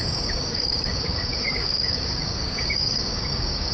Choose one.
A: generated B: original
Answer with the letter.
A